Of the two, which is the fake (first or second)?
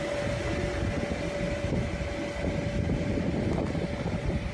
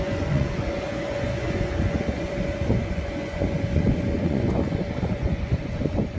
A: second